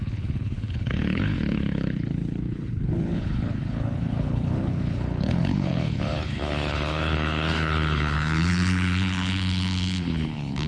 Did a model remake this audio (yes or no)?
yes